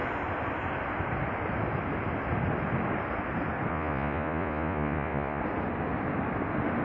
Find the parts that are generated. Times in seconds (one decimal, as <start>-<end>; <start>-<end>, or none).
3.7-5.4